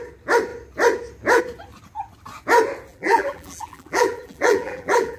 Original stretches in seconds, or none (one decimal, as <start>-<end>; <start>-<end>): 0.0-2.9